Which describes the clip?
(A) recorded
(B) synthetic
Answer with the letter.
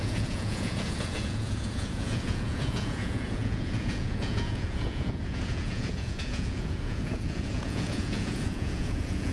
B